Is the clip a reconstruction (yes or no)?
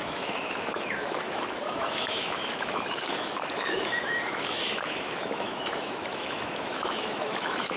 yes